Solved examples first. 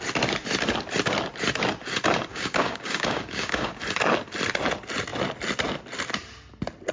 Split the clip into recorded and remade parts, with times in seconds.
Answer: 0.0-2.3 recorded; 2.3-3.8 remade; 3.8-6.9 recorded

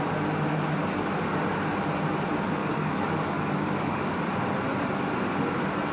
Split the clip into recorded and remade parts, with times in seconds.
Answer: 0.0-2.6 recorded; 2.6-4.0 remade; 4.0-5.9 recorded

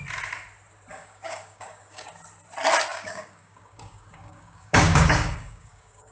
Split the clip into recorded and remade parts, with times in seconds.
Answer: 0.0-0.9 recorded; 0.9-2.1 remade; 2.1-2.9 recorded; 2.9-6.1 remade

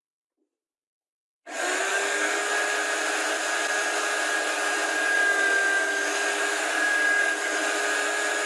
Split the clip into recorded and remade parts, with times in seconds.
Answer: 0.0-1.9 recorded; 1.9-2.4 remade; 2.4-8.5 recorded

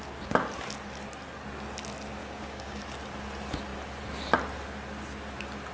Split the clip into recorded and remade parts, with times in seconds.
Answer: 0.0-2.2 recorded; 2.2-2.8 remade; 2.8-5.7 recorded